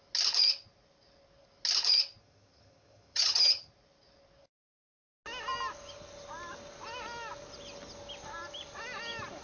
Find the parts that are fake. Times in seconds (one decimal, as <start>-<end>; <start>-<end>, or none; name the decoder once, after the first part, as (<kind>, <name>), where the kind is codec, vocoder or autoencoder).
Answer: 2.2-3.7 (vocoder, HiFi-GAN)